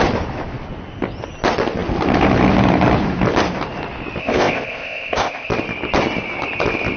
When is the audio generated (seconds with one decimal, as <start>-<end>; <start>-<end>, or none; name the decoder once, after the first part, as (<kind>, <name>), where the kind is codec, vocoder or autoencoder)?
4.2-5.5 (codec, ZipCodec)